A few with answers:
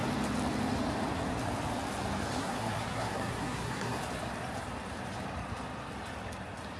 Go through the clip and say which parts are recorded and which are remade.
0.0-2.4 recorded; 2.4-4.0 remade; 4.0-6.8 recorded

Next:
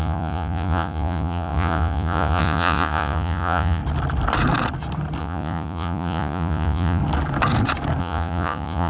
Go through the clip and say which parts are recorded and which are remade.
0.0-3.8 remade; 3.8-5.2 recorded; 5.2-7.0 remade; 7.0-8.0 recorded; 8.0-8.9 remade